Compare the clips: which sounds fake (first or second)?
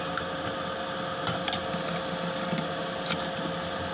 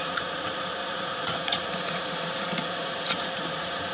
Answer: second